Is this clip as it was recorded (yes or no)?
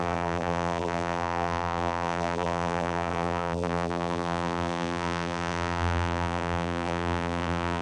no